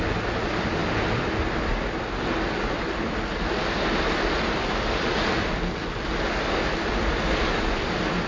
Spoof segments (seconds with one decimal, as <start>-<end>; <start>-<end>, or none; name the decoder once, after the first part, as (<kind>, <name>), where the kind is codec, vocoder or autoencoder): none